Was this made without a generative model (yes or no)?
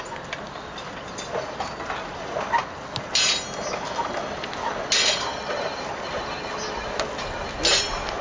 yes